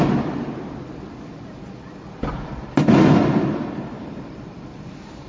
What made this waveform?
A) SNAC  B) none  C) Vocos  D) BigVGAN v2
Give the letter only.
D